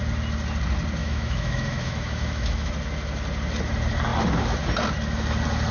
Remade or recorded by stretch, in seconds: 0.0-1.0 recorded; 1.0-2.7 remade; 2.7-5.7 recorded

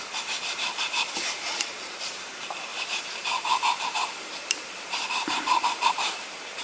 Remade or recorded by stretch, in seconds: 0.0-2.7 remade; 2.7-3.8 recorded; 3.8-6.6 remade

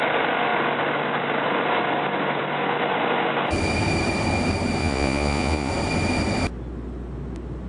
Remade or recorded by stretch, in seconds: 0.0-4.8 recorded; 4.8-5.7 remade; 5.7-7.7 recorded

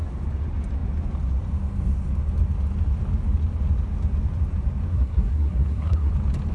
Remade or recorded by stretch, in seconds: 0.0-4.9 recorded; 4.9-6.1 remade; 6.1-6.5 recorded

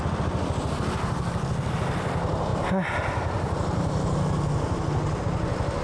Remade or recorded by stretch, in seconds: 0.0-5.8 recorded

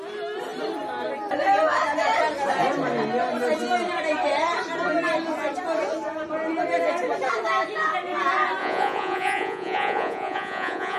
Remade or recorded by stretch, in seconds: 0.0-8.6 recorded; 8.6-11.0 remade

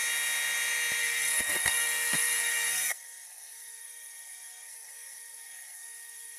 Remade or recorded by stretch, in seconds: 0.0-1.0 recorded; 1.0-6.4 remade

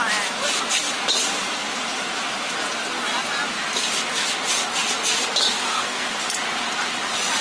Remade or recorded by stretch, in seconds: 0.0-5.7 recorded; 5.7-6.2 remade; 6.2-7.4 recorded